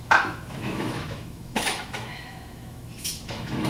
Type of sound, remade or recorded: remade